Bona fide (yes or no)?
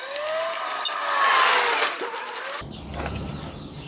yes